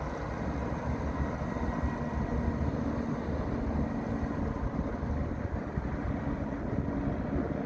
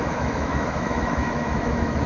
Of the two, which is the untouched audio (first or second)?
first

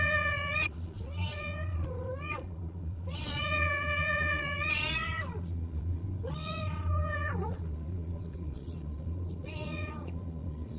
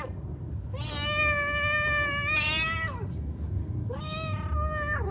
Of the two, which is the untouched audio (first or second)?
second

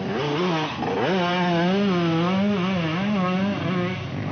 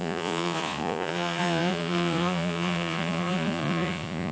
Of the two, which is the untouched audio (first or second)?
first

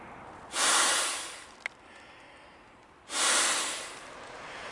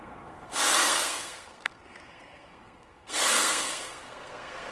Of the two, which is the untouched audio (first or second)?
first